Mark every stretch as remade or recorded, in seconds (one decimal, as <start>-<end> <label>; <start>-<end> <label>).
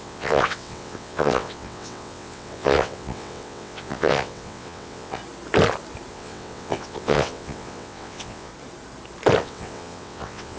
0.0-5.2 remade; 5.2-6.1 recorded; 6.1-8.5 remade; 8.5-9.4 recorded; 9.4-10.6 remade